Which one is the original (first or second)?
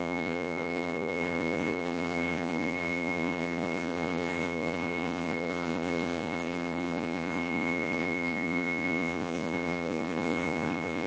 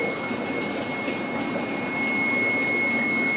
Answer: second